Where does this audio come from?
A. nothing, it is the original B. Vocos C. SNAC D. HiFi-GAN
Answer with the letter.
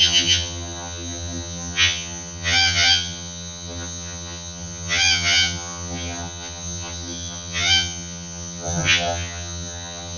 D